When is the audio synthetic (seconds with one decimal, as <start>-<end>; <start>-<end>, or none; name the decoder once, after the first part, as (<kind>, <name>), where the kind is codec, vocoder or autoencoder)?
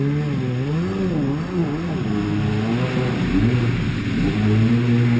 none